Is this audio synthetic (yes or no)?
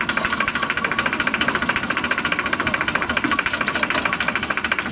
no